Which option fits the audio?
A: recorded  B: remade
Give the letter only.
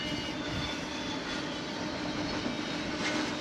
A